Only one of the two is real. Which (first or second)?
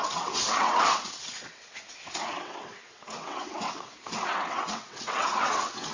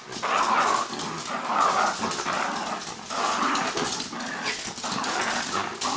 second